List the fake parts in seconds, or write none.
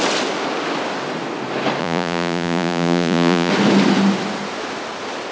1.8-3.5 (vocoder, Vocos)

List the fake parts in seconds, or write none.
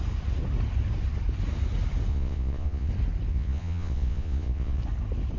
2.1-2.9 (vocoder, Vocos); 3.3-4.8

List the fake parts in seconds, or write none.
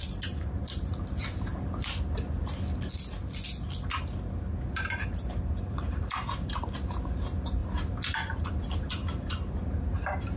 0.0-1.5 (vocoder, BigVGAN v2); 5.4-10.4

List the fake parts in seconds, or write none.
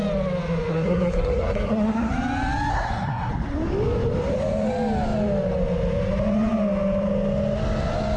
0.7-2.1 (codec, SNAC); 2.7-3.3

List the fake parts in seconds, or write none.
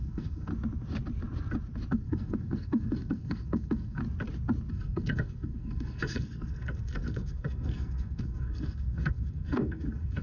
0.0-0.5 (codec, SNAC); 1.9-4.0; 4.7-10.2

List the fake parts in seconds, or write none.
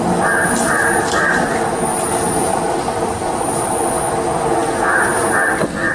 0.4-3.9 (vocoder, BigVGAN v2)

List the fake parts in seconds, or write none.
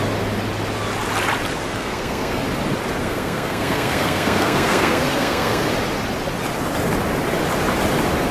1.7-2.4 (codec, SNAC); 3.0-5.7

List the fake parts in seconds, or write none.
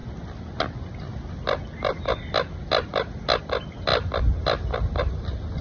none